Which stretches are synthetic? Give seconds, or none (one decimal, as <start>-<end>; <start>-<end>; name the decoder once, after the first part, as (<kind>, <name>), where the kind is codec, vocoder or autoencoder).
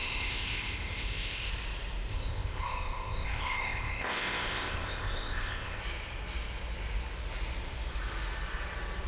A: 0.0-1.5 (codec, ZipCodec); 2.1-5.8